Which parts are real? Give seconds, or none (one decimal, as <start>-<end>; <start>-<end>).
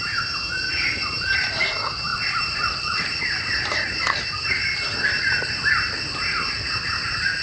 0.0-0.7; 1.6-2.1; 6.5-7.4